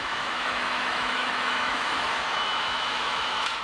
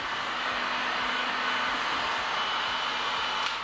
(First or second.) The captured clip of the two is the second